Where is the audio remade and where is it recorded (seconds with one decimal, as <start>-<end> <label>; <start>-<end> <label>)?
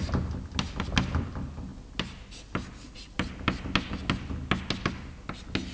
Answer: 0.0-5.7 recorded